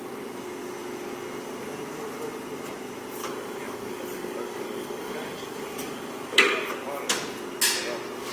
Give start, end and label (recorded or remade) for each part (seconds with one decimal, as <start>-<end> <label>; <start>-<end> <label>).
0.0-3.2 recorded; 3.2-6.7 remade; 6.7-8.3 recorded